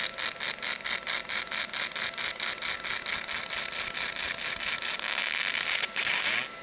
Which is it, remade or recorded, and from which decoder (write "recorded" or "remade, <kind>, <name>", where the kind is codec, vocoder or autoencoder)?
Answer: recorded